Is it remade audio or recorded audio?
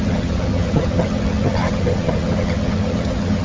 remade